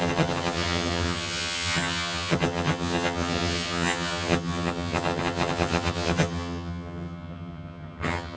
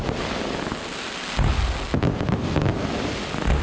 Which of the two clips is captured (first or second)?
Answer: second